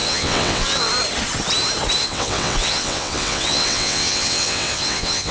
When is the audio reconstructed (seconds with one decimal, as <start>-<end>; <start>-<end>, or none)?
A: 0.0-0.9; 2.0-5.3